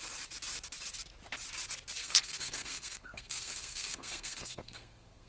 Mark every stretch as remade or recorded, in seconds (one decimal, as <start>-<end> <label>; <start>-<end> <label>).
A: 0.0-2.0 recorded; 2.0-5.3 remade